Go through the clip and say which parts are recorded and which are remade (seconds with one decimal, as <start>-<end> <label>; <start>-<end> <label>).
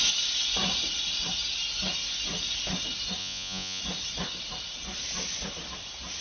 0.0-3.2 recorded; 3.2-3.8 remade; 3.8-6.2 recorded